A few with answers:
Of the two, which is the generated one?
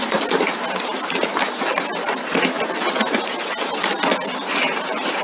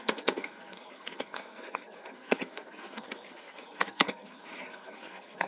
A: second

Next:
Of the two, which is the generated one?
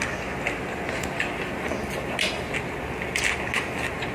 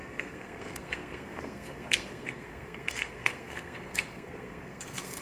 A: second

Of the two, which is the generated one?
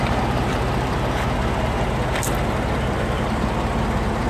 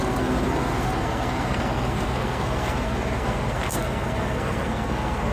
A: second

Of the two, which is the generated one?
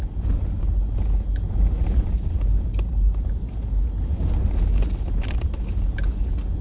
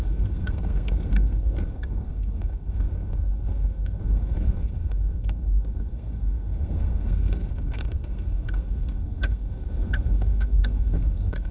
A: second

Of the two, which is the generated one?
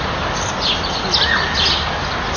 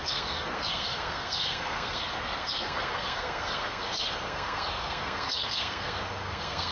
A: second